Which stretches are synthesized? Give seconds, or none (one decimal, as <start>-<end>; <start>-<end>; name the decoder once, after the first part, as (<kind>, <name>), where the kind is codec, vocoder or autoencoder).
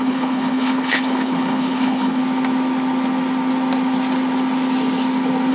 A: 0.0-2.2 (codec, HILCodec)